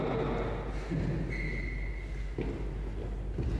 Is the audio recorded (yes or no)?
yes